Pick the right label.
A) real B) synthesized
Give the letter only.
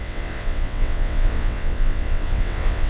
B